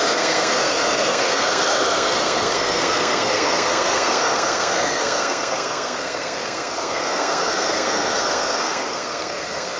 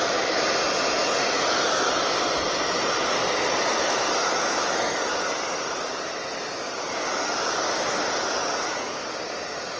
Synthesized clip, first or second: first